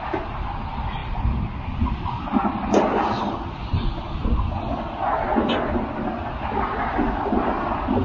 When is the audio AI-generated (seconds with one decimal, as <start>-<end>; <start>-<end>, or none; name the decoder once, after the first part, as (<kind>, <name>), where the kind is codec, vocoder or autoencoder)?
none